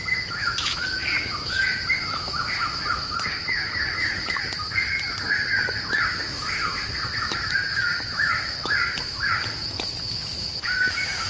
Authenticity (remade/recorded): remade